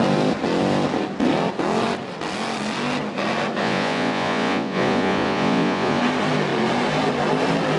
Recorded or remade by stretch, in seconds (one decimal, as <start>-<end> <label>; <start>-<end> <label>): 0.0-3.6 recorded; 3.6-6.0 remade; 6.0-7.8 recorded